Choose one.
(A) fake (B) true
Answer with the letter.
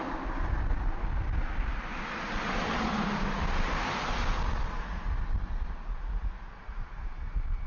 B